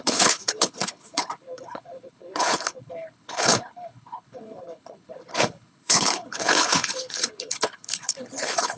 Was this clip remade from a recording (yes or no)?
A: yes